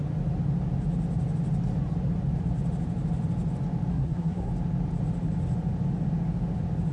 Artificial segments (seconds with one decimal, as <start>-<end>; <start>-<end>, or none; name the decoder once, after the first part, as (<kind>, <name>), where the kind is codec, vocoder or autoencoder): 3.9-4.5 (codec, SNAC)